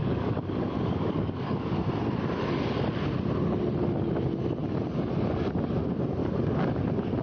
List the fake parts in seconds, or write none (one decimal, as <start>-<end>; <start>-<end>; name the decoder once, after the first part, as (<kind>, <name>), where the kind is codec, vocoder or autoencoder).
0.0-1.8 (codec, DAC); 6.2-6.8